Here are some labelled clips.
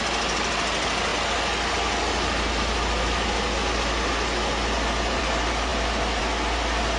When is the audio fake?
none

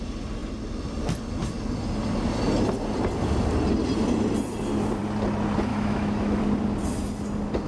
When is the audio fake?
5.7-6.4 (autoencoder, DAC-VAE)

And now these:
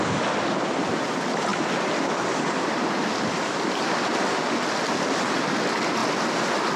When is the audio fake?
1.5-5.4 (vocoder, BigVGAN v2)

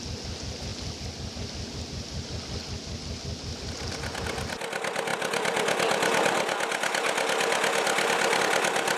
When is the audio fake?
none

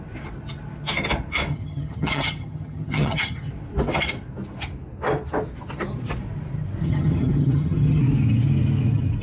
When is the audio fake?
1.5-3.5 (vocoder, HiFi-GAN); 6.8-8.0